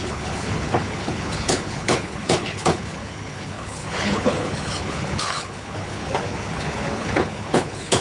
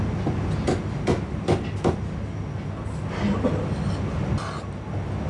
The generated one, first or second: first